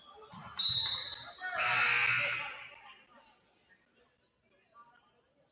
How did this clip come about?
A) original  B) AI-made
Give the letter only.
A